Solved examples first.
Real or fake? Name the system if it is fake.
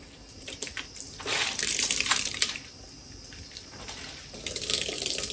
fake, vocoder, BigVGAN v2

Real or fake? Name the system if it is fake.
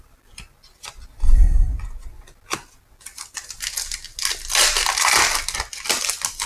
real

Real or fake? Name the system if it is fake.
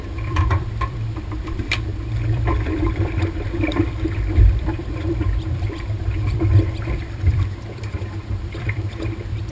fake, vocoder, BigVGAN v2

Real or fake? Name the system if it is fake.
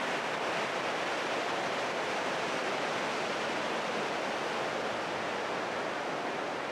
real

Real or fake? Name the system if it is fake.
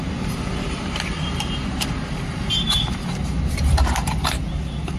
fake, vocoder, BigVGAN v2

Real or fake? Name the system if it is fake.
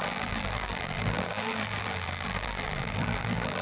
fake, vocoder, BigVGAN v2